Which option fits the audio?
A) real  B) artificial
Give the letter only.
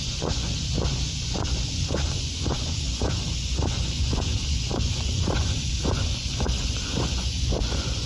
B